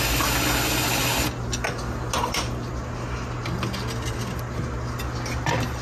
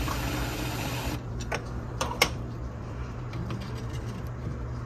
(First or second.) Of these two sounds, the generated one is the second